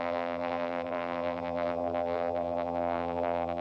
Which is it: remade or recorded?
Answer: remade